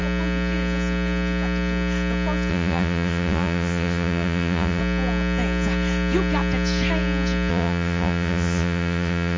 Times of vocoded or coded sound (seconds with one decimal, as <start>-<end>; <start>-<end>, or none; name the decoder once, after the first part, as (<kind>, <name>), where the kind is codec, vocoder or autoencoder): 2.5-4.8 (vocoder, Vocos); 7.5-9.4